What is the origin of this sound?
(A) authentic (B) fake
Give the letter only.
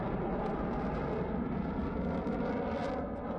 A